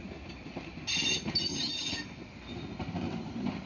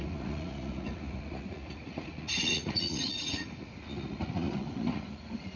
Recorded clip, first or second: first